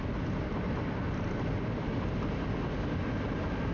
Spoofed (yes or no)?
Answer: no